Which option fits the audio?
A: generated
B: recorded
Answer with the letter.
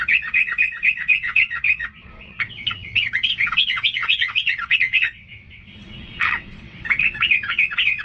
A